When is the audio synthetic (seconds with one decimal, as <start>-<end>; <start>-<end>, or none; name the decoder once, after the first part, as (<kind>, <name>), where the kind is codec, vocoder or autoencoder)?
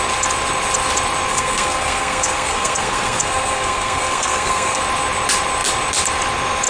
1.3-4.8 (codec, SNAC)